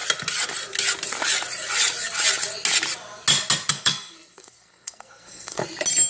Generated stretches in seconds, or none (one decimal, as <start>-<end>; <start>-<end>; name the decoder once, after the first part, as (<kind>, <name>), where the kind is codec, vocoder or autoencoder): 3.7-5.6 (codec, SNAC)